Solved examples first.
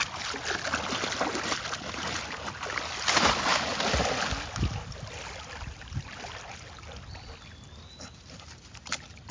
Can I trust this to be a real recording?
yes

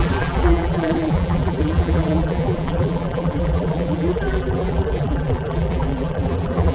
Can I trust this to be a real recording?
no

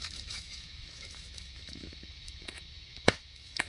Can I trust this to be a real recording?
no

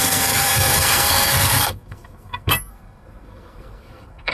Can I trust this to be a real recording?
no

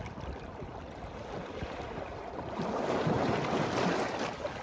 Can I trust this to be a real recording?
yes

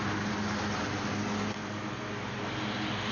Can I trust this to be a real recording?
yes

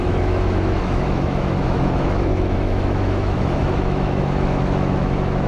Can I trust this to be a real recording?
no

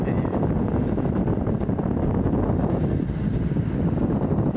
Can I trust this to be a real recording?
yes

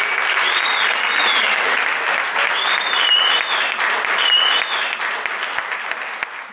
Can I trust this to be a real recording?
yes